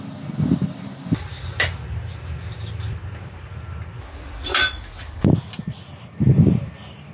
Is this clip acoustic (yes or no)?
yes